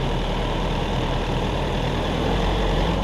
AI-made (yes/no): yes